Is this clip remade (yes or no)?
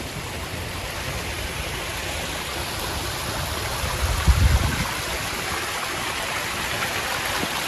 no